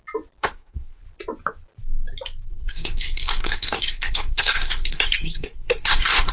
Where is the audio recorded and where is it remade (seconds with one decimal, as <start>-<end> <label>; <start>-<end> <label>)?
0.0-0.4 recorded; 0.4-1.0 remade; 1.0-2.5 recorded; 2.5-6.3 remade